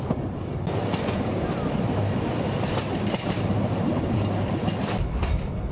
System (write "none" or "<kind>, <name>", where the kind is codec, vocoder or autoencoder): none